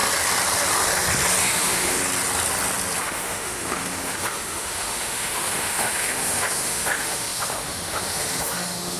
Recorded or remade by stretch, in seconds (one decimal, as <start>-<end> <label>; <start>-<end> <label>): 0.0-1.4 recorded; 1.4-2.0 remade; 2.0-3.0 recorded; 3.0-9.0 remade